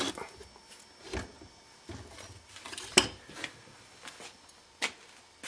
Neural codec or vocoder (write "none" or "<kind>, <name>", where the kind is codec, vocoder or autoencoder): none